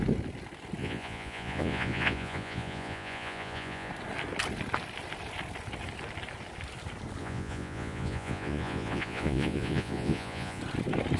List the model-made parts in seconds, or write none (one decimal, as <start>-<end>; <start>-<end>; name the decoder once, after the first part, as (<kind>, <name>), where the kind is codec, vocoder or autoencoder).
0.8-3.9 (vocoder, Vocos); 7.2-10.6